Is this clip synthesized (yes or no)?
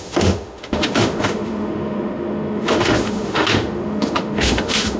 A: yes